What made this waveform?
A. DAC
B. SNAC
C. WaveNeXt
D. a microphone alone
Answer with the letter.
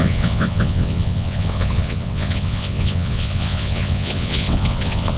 C